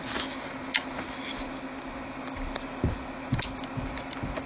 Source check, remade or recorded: recorded